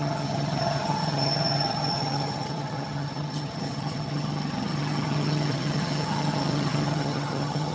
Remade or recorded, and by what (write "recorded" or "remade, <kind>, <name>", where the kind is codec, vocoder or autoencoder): remade, vocoder, HiFi-GAN